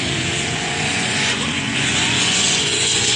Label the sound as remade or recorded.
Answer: remade